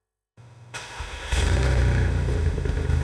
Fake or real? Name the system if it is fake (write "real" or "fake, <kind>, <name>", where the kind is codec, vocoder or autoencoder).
fake, autoencoder, DAC-VAE